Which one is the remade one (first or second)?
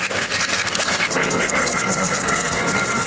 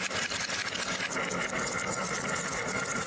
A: first